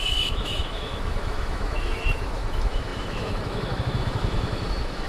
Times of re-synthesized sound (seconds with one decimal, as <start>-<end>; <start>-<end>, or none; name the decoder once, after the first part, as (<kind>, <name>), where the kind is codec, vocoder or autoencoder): 0.0-5.1 (autoencoder, DAC-VAE)